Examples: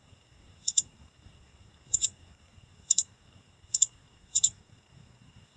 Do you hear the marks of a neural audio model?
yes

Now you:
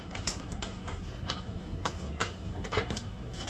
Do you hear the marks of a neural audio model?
yes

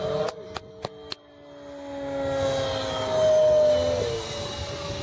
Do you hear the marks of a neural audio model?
no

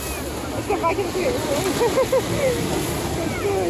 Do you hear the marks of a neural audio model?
no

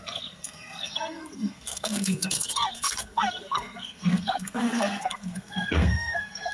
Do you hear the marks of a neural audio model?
yes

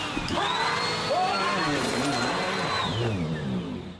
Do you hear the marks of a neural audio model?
no